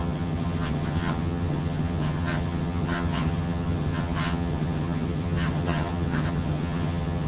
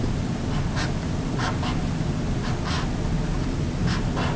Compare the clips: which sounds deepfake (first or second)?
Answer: first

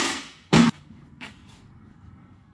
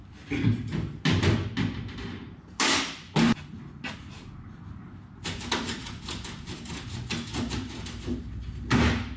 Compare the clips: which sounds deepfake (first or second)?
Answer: first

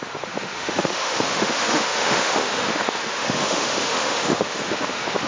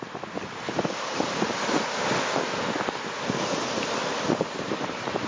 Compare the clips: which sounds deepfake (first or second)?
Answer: first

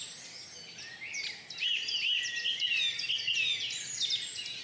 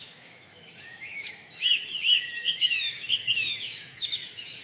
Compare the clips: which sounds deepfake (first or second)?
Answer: second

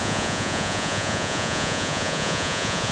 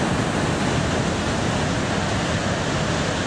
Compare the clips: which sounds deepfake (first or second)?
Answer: first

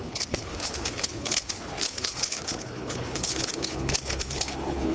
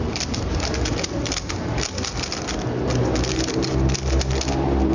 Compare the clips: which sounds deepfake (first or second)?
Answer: first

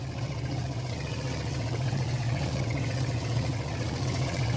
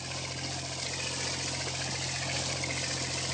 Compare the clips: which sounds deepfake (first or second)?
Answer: first